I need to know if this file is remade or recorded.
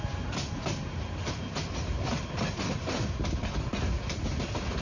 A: recorded